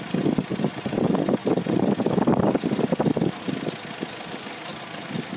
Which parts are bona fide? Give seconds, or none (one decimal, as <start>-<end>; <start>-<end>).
0.0-5.4

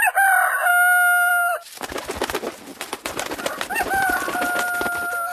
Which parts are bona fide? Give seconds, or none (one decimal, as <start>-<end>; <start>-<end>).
0.0-2.7; 4.2-5.3

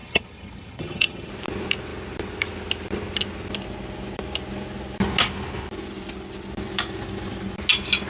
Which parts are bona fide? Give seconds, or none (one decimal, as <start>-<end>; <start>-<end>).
1.3-8.1

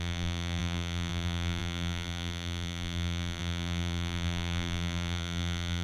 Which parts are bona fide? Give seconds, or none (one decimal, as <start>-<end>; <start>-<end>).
none

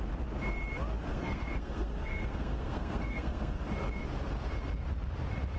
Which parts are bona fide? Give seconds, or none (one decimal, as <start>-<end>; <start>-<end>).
0.0-1.1; 3.6-5.6

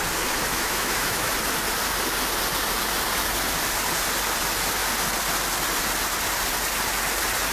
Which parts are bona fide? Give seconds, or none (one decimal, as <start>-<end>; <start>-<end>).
0.0-0.5; 1.3-7.5